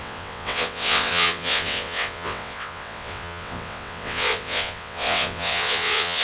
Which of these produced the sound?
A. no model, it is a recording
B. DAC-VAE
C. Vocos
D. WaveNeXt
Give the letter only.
D